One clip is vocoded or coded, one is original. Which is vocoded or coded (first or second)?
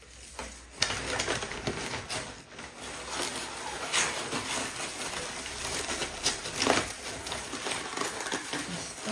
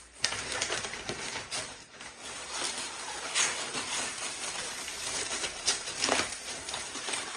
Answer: second